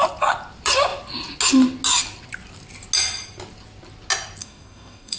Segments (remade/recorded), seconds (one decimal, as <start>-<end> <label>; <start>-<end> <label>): 0.0-4.4 recorded; 4.4-5.2 remade